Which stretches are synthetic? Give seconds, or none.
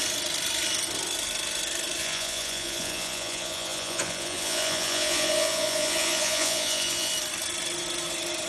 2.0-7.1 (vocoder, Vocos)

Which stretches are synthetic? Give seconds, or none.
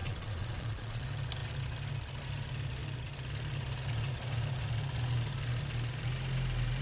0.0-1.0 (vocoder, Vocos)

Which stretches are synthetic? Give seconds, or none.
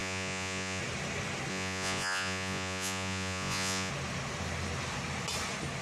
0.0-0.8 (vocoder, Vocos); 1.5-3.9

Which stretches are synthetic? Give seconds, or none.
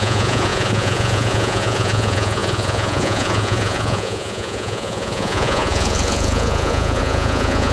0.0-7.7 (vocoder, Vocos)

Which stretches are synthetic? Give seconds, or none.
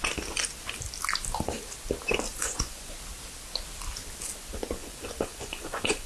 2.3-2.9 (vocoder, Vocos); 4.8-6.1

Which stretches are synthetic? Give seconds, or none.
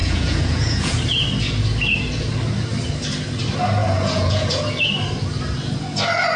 0.0-0.9 (vocoder, Vocos); 3.8-4.8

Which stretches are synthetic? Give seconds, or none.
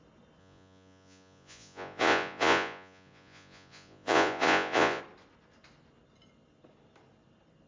0.4-5.0 (vocoder, Vocos)